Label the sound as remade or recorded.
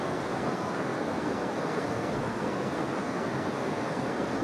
remade